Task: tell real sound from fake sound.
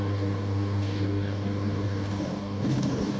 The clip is fake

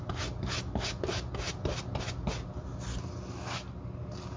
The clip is real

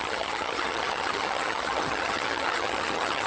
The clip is fake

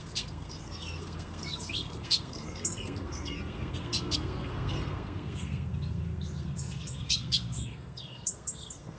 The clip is fake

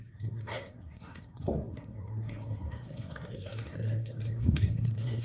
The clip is fake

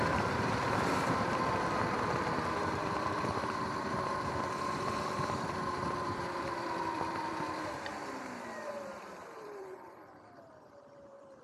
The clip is fake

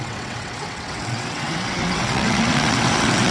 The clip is fake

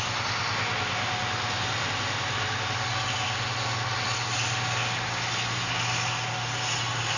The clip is real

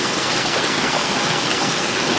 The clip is fake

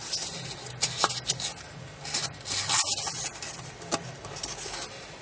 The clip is real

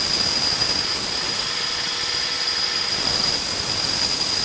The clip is real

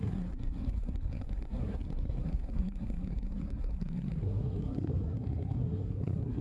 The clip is fake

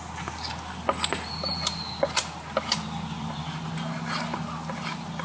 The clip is real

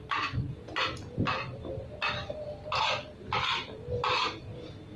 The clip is real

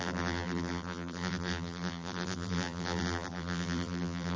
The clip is fake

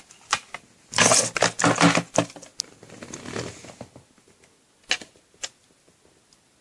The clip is real